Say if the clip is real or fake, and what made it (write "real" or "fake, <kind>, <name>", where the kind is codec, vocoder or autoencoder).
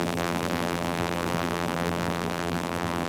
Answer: fake, vocoder, BigVGAN v2